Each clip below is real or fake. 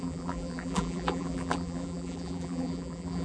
fake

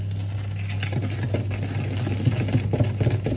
real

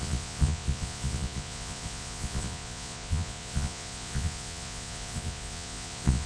fake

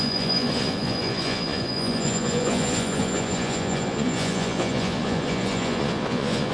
fake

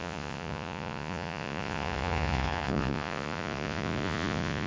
fake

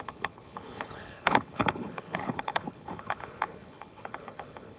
fake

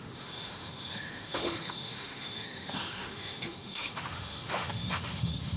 fake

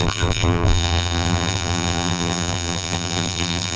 fake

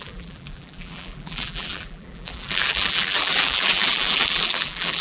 fake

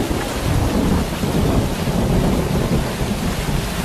real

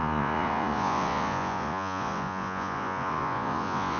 fake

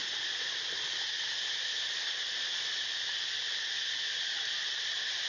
real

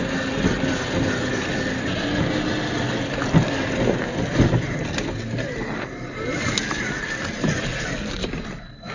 real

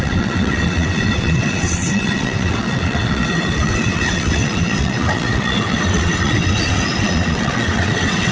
fake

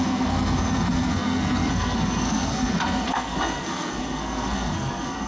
fake